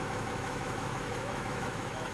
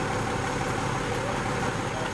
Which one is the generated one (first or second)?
first